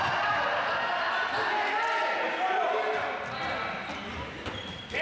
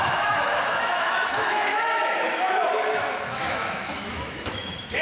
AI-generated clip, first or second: second